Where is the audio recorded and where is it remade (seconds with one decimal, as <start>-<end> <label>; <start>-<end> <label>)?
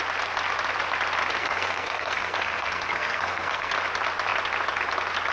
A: 0.0-1.4 recorded; 1.4-3.7 remade; 3.7-5.3 recorded